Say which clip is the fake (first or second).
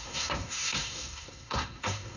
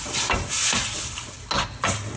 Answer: first